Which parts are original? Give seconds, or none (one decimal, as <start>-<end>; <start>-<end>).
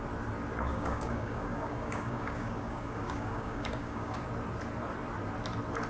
0.0-0.7; 4.2-5.9